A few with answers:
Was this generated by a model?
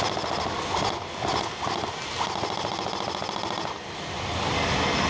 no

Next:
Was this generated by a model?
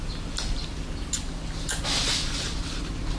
no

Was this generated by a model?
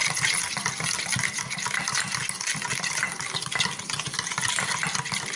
no